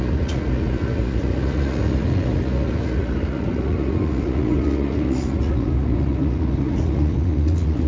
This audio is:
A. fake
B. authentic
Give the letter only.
A